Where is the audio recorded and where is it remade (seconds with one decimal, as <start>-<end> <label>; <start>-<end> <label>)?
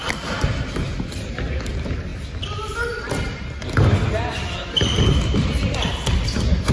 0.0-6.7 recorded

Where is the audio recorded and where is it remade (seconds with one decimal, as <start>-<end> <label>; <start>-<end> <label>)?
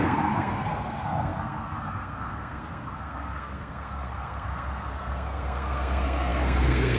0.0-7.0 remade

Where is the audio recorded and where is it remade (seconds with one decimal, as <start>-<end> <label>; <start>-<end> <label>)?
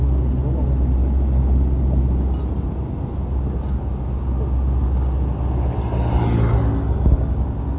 0.0-7.8 recorded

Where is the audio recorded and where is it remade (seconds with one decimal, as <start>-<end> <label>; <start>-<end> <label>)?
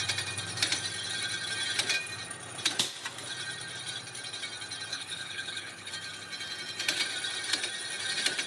0.0-4.9 recorded; 4.9-5.9 remade; 5.9-8.5 recorded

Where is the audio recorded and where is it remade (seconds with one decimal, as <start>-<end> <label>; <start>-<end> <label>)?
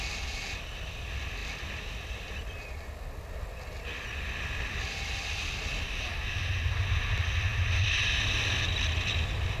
0.0-9.6 recorded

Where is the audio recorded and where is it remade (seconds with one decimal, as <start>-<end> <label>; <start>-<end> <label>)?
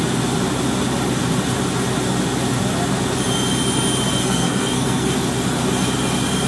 0.0-4.2 recorded; 4.2-5.1 remade; 5.1-6.5 recorded